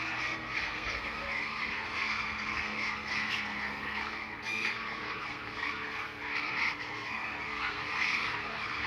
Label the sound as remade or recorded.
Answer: remade